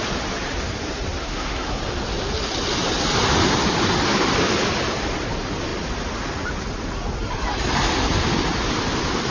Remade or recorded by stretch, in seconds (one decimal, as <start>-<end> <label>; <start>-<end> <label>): 0.0-1.2 recorded; 1.2-1.8 remade; 1.8-9.3 recorded